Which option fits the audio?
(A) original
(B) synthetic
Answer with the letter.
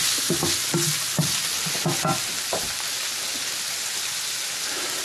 A